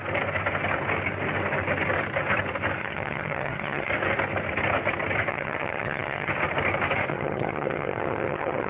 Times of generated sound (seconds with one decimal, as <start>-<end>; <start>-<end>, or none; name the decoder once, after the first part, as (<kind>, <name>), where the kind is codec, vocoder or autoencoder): 2.8-3.9 (vocoder, HiFi-GAN); 5.3-6.3; 7.1-8.7